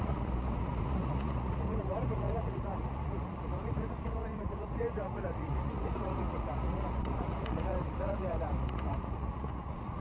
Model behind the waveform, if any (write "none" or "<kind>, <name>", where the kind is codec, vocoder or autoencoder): vocoder, Vocos